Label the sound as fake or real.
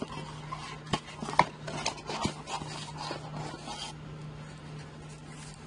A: real